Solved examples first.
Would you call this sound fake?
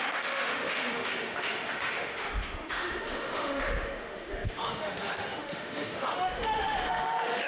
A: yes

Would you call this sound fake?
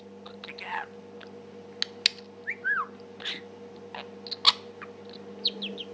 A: no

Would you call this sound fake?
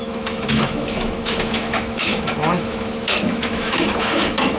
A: yes